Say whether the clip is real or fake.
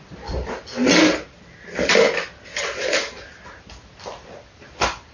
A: real